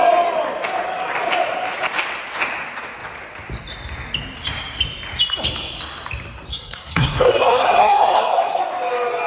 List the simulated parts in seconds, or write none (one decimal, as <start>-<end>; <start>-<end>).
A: 6.5-8.6